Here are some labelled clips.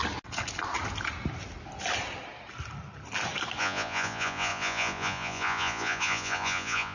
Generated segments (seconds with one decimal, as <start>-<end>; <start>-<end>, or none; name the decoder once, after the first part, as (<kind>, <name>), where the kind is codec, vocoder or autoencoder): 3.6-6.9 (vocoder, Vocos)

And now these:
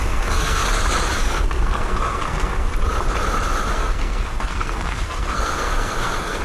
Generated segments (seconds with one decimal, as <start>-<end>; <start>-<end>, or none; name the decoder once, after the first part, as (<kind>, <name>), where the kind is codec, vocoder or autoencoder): 0.0-0.6 (codec, SNAC); 1.2-2.7; 3.7-6.4

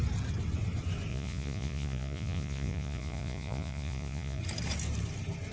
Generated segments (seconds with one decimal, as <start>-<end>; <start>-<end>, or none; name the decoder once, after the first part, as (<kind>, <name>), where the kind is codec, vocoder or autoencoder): 1.1-4.4 (vocoder, Vocos)